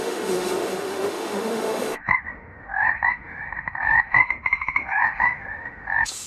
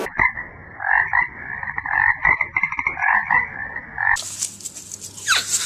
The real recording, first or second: second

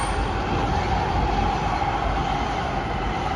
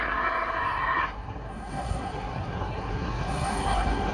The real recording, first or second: first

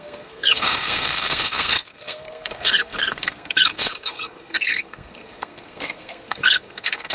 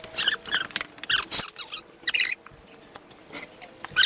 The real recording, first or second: second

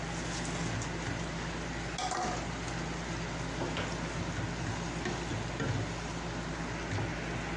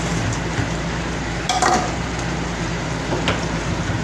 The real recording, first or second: first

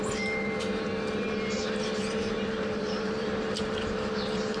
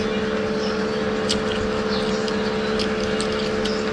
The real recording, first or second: second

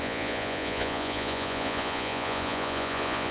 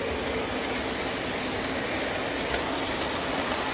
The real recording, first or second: second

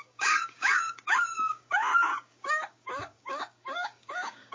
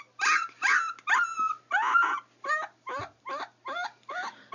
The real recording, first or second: second